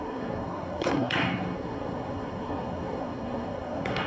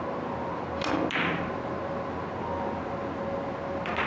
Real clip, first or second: second